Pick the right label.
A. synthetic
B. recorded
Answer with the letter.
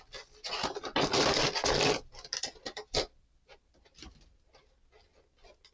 B